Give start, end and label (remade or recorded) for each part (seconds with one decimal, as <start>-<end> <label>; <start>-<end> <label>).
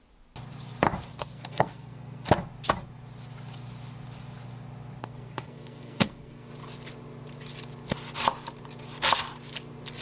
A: 0.0-1.1 recorded; 1.1-2.3 remade; 2.3-5.0 recorded; 5.0-6.5 remade; 6.5-10.0 recorded